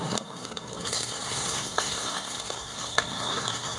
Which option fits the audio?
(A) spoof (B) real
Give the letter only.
A